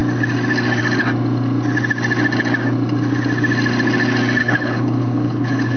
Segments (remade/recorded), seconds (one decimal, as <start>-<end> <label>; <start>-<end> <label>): 0.0-4.4 recorded; 4.4-5.8 remade